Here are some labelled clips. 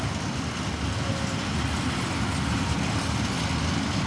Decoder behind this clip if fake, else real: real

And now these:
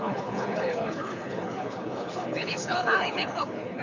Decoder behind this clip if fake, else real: fake, codec, HILCodec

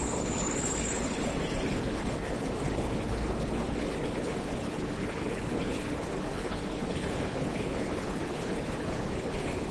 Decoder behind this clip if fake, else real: fake, codec, HILCodec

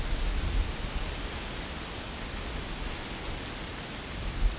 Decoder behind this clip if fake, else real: real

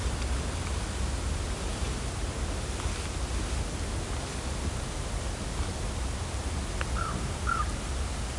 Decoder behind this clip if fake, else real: real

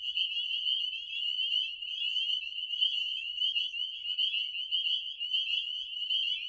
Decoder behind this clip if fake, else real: real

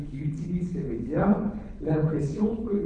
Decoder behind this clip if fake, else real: fake, codec, HILCodec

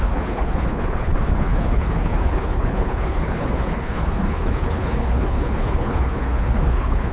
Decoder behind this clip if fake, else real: fake, codec, HILCodec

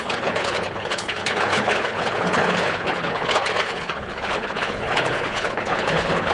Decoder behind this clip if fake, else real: fake, codec, HILCodec